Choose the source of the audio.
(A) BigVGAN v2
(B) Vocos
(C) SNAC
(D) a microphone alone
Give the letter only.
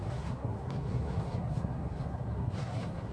C